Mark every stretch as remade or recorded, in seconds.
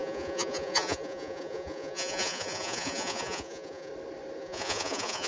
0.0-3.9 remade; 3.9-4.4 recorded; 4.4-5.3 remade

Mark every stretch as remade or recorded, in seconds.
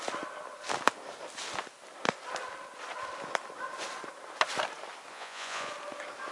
0.0-5.1 recorded; 5.1-5.7 remade; 5.7-6.3 recorded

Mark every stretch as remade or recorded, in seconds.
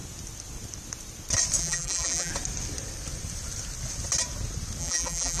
0.0-1.6 recorded; 1.6-2.3 remade; 2.3-4.8 recorded; 4.8-5.4 remade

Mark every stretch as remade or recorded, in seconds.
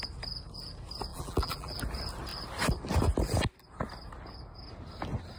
0.0-1.1 recorded; 1.1-1.8 remade; 1.8-5.4 recorded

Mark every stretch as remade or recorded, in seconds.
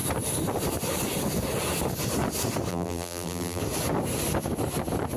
0.0-2.7 recorded; 2.7-3.6 remade; 3.6-5.2 recorded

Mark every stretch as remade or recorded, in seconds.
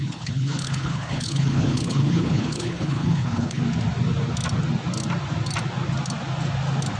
0.0-3.6 remade; 3.6-7.0 recorded